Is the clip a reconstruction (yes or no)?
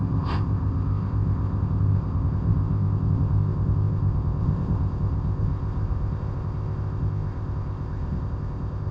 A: yes